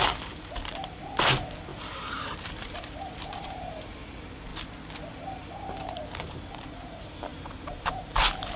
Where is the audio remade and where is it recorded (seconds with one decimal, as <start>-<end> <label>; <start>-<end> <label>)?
0.0-4.5 remade; 4.5-5.1 recorded; 5.1-8.6 remade